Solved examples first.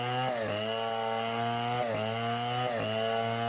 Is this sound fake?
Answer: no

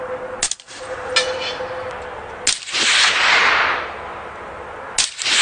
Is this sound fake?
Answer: no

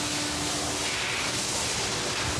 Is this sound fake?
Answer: no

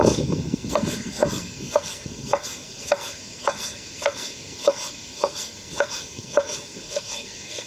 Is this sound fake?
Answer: yes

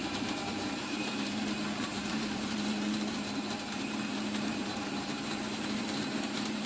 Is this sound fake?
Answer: yes